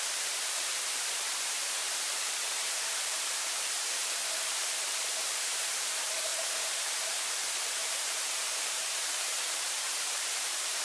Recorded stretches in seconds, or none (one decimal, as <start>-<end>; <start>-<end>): none